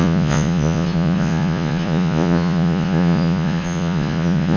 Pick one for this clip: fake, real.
fake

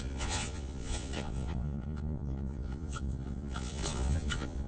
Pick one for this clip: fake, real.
fake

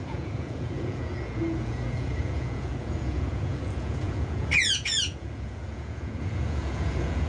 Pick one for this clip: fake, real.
fake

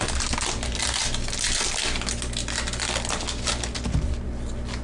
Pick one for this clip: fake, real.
real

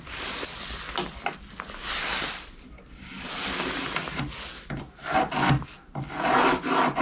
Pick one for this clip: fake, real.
real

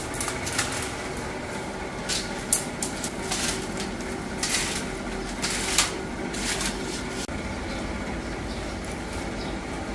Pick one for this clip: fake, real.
real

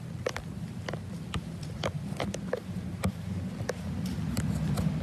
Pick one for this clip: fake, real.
real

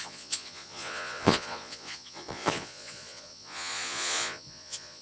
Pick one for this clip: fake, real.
fake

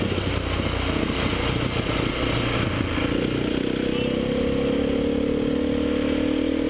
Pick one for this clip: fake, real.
real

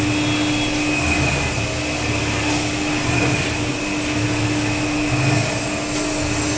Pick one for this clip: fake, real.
real